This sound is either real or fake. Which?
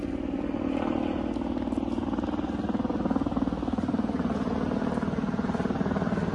real